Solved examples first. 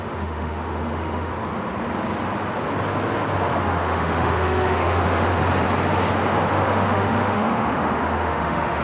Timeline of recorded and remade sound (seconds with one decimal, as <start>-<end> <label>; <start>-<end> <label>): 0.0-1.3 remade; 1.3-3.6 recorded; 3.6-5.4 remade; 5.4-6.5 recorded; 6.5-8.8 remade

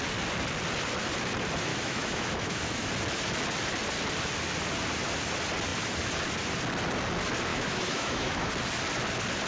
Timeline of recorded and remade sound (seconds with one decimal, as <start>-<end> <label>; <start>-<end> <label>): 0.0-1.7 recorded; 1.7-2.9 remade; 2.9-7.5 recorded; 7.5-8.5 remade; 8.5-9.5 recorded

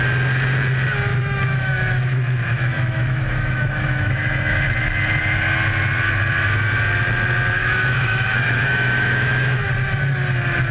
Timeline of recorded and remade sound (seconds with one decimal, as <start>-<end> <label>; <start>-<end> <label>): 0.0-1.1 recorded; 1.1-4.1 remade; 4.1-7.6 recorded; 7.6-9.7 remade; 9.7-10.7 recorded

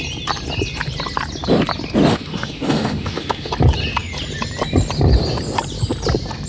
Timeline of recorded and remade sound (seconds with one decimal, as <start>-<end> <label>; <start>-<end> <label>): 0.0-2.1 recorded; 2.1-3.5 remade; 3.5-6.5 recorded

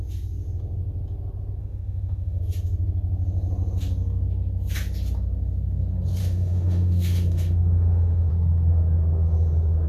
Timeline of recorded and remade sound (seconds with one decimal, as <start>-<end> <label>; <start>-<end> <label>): 0.0-1.6 recorded; 1.6-2.4 remade; 2.4-6.2 recorded; 6.2-8.3 remade; 8.3-9.9 recorded

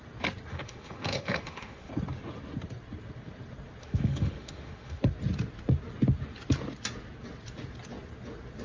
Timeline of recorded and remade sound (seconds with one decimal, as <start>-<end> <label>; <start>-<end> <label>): 0.0-0.5 recorded; 0.5-1.9 remade; 1.9-3.8 recorded; 3.8-5.0 remade; 5.0-8.6 recorded